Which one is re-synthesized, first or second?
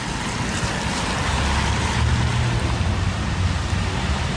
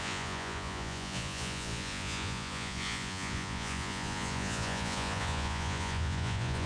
second